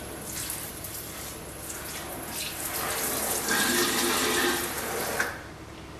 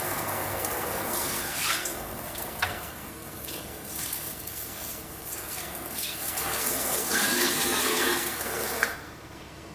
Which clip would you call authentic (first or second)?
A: first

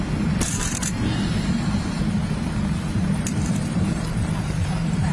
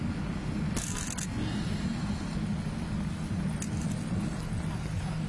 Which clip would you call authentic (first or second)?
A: second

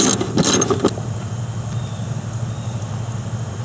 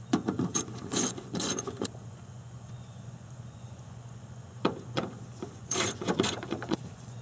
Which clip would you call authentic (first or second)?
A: first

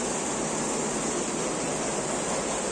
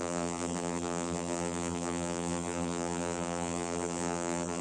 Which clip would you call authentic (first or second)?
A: first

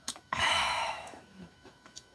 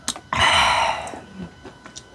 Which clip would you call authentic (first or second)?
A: second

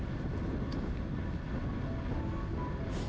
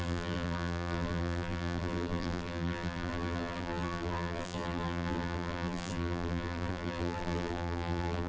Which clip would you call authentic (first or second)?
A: first